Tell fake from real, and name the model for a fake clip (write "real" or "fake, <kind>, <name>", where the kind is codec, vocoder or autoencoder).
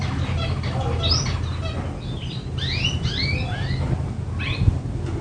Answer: real